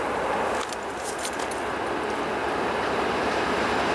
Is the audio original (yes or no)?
yes